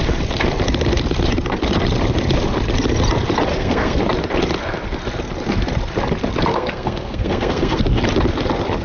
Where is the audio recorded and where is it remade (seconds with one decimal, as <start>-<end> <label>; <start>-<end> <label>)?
0.0-3.5 recorded; 3.5-4.0 remade; 4.0-6.5 recorded; 6.5-7.8 remade; 7.8-8.8 recorded